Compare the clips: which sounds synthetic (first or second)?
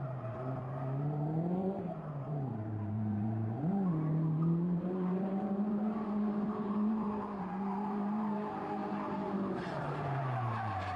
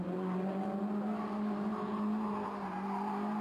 first